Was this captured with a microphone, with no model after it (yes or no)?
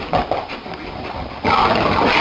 no